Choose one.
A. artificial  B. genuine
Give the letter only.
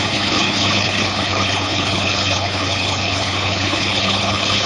A